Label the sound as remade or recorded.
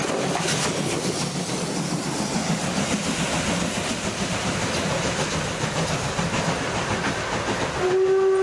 recorded